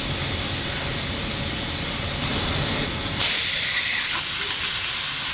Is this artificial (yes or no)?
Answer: no